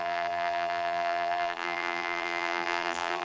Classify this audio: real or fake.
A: fake